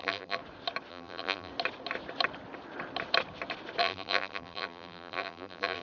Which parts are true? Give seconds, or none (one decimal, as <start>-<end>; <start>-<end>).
0.4-0.9; 1.5-3.8